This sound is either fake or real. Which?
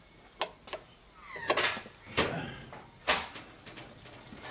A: real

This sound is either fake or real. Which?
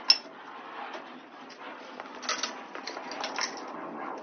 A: real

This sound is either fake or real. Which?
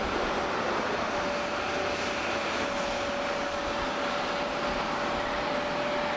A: real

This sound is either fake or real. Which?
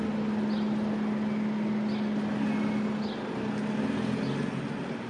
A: real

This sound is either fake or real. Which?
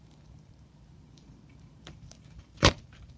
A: fake